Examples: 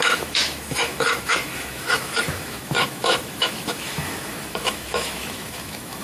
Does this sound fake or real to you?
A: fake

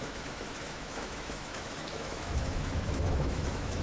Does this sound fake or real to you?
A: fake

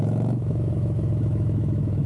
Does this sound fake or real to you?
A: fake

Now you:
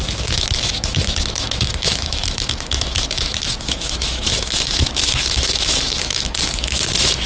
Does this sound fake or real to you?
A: fake